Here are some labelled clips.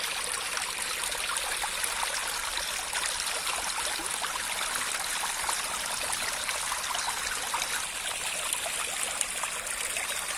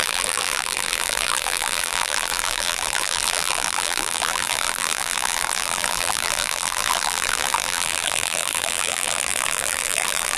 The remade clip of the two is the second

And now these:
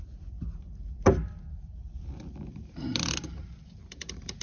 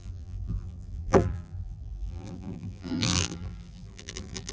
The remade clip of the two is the second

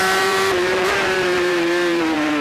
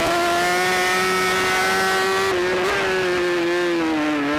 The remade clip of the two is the first